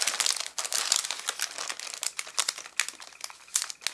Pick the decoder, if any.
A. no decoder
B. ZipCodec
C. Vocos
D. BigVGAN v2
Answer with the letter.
A